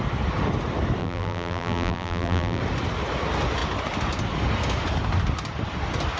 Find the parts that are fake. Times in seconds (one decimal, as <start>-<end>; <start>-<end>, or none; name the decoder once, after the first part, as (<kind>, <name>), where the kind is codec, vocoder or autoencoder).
1.0-2.6 (vocoder, BigVGAN v2)